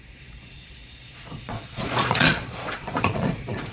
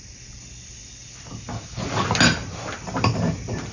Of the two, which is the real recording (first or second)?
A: second